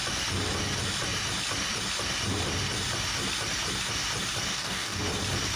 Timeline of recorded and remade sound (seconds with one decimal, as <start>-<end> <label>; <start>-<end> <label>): 0.0-4.5 recorded; 4.5-5.0 remade; 5.0-5.6 recorded